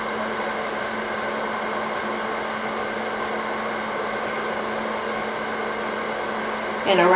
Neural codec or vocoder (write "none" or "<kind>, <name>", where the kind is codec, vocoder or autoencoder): none